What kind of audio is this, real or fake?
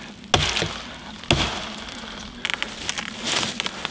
real